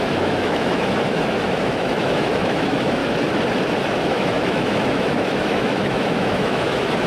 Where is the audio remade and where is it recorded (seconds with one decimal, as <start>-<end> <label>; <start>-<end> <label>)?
0.0-3.0 remade; 3.0-4.1 recorded; 4.1-7.1 remade